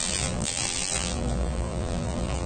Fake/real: fake